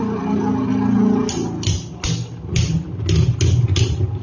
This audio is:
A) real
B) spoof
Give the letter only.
A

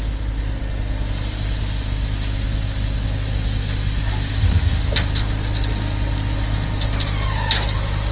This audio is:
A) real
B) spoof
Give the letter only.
A